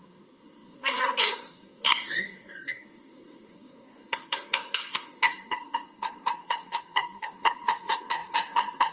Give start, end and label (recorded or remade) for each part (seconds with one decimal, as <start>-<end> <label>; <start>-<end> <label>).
0.0-8.9 remade